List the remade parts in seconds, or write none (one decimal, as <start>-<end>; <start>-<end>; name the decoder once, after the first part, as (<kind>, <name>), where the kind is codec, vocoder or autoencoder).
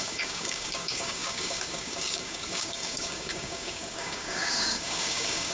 0.0-5.5 (codec, DAC)